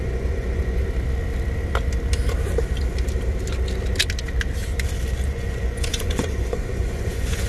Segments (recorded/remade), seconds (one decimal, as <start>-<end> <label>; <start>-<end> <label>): 0.0-0.8 remade; 0.8-5.3 recorded; 5.3-7.5 remade